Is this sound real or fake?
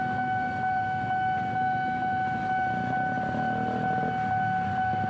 real